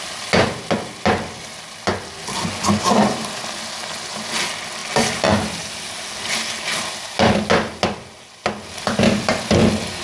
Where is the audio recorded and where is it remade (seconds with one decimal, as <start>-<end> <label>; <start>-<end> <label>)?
0.0-10.0 recorded